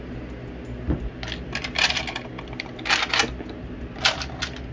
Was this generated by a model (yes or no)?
no